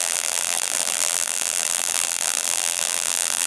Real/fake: fake